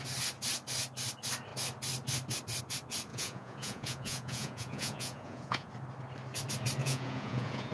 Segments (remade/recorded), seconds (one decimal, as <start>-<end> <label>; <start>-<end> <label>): 0.0-3.1 recorded; 3.1-5.7 remade; 5.7-6.8 recorded; 6.8-7.7 remade